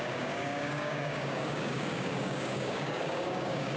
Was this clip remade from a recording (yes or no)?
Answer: yes